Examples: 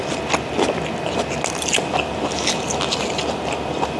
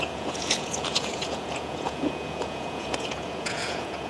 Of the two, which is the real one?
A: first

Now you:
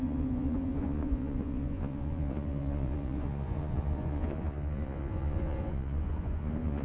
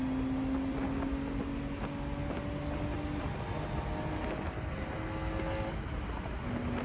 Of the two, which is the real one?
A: second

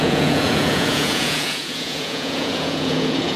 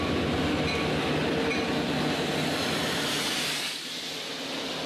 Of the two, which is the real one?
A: second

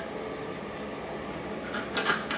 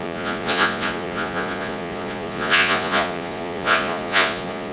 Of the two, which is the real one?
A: first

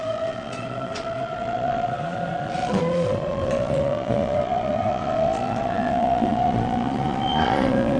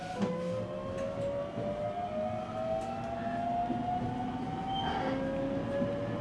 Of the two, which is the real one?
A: second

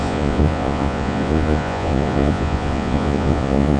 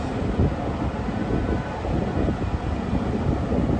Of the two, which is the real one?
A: second